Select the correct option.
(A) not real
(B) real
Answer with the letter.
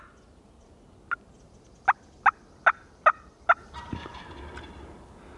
B